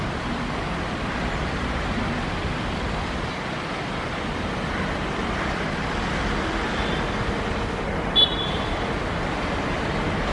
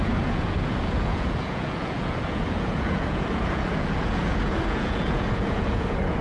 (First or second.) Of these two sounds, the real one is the first